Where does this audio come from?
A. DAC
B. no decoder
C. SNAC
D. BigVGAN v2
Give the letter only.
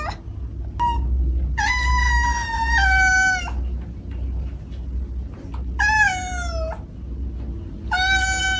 B